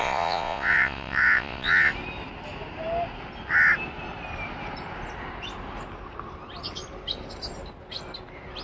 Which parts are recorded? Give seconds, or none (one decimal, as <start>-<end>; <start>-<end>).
1.9-8.6